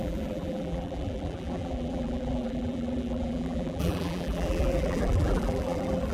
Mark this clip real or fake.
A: fake